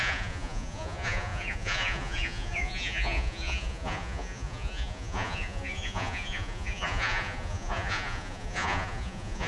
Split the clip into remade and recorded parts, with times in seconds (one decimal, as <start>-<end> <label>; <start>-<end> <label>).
0.0-9.5 remade